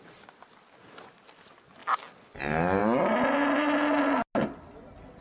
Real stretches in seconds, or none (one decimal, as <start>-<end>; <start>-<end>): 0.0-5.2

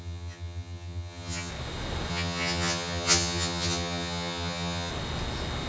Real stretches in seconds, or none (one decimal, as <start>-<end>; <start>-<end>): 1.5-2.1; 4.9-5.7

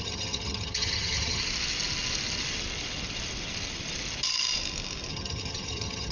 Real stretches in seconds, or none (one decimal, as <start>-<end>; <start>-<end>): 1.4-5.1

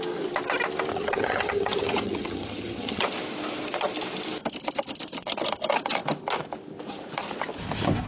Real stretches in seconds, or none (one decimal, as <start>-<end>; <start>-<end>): 0.0-0.9; 3.0-8.1

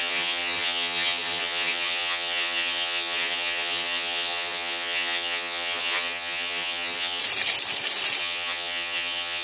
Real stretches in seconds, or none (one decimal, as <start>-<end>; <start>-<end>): 7.2-8.2

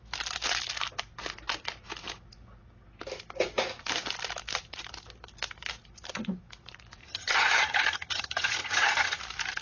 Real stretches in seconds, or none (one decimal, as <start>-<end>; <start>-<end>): 0.0-7.0; 9.2-9.6

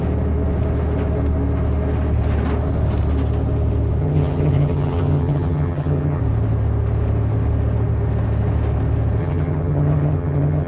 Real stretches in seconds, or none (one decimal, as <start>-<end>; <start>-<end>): 0.0-4.0; 6.2-9.2